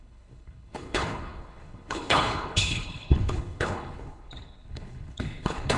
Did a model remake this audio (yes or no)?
yes